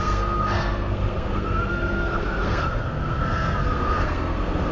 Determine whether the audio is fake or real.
fake